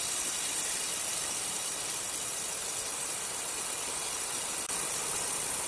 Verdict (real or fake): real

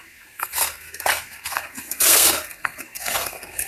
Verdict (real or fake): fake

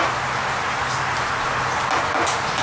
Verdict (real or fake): real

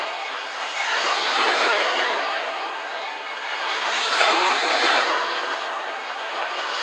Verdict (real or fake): fake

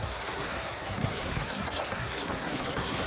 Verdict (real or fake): fake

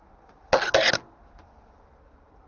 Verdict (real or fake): real